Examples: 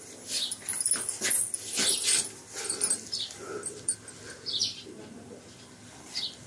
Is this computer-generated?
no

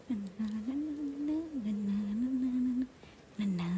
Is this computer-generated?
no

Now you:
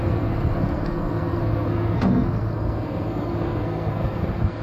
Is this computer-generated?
yes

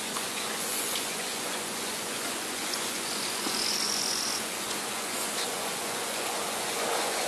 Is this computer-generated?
yes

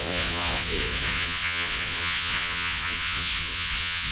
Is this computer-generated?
yes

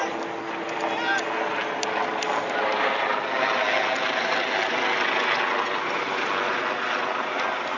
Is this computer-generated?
no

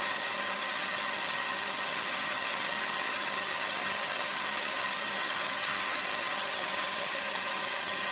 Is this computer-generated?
yes